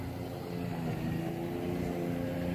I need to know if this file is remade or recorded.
recorded